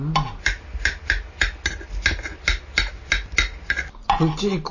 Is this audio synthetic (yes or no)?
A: no